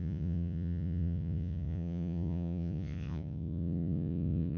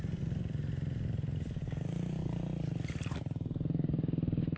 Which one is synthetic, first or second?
first